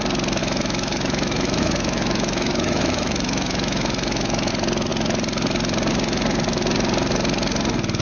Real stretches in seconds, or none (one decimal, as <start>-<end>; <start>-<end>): 0.0-0.4; 4.5-8.0